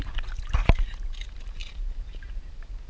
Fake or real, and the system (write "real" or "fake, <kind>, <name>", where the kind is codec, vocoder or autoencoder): real